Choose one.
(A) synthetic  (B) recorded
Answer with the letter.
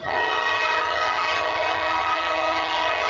A